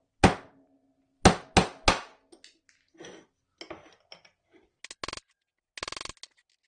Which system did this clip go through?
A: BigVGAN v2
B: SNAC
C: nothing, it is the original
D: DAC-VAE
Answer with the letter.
C